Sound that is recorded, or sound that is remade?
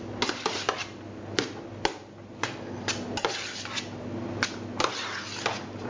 recorded